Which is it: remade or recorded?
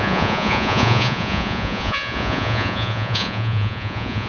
remade